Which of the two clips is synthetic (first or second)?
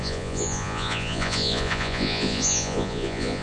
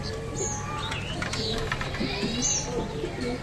first